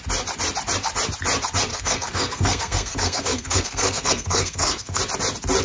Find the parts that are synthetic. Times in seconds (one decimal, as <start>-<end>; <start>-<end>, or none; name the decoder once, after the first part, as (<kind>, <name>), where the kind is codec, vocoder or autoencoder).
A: 1.7-5.0 (codec, SNAC)